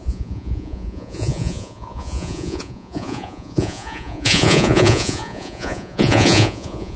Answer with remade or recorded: remade